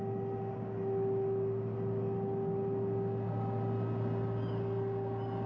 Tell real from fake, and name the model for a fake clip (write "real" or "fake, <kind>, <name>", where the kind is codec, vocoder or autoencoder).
real